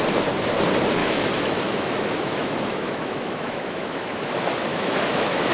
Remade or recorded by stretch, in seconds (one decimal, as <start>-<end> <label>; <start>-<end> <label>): 0.0-1.0 recorded; 1.0-4.3 remade; 4.3-4.7 recorded; 4.7-5.5 remade